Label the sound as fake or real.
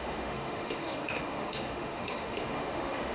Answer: fake